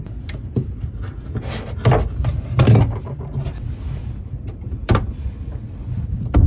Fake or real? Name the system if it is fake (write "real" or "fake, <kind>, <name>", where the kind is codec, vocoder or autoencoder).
real